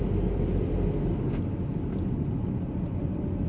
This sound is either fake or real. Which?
real